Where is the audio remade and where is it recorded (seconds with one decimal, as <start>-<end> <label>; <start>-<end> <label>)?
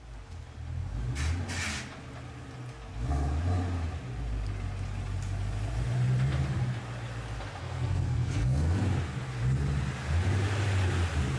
0.0-7.6 recorded; 7.6-8.8 remade; 8.8-11.4 recorded